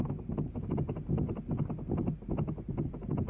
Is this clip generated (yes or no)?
no